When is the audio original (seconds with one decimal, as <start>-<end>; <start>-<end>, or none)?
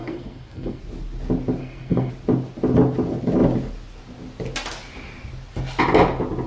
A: 0.8-1.6; 2.1-6.5